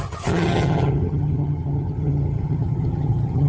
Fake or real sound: fake